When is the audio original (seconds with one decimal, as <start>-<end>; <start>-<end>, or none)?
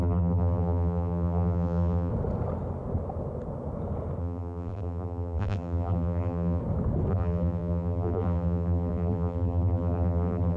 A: 2.1-4.2; 6.6-7.1